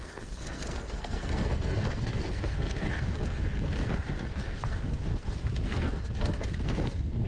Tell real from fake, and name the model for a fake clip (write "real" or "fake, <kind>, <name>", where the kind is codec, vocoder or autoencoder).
fake, codec, SNAC